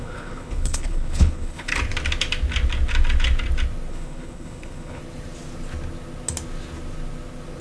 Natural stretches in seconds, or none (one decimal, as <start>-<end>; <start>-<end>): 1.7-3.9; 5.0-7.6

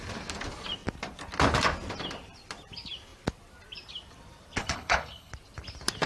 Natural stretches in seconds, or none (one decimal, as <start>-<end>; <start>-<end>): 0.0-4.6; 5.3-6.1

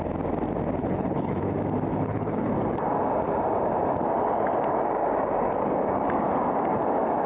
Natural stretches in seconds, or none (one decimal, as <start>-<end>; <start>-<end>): 0.0-0.8; 1.4-1.9; 2.5-7.3